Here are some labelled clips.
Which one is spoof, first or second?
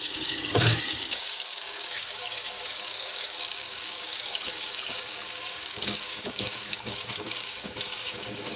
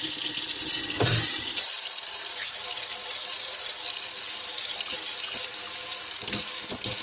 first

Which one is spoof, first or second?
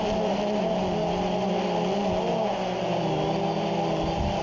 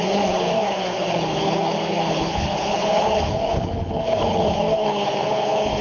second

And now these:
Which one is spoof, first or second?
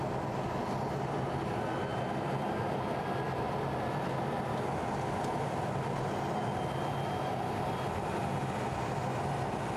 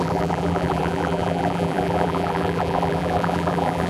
second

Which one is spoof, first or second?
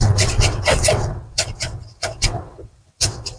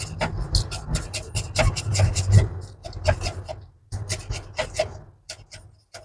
first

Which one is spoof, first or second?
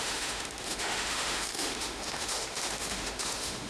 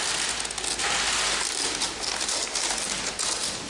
first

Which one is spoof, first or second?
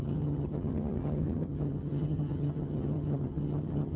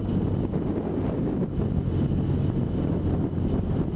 first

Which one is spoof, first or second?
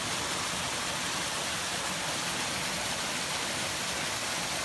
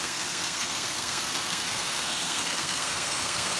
second